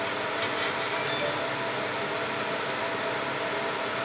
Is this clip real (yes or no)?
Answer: yes